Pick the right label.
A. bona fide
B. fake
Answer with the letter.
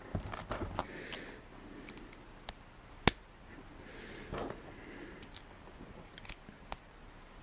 A